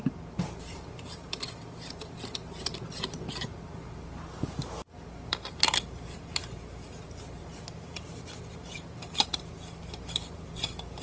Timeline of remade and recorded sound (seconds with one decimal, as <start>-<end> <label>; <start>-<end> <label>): 0.0-11.0 recorded